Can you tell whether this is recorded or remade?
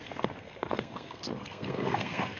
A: remade